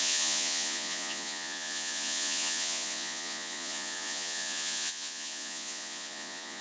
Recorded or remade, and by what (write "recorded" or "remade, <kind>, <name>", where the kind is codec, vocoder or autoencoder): remade, vocoder, Vocos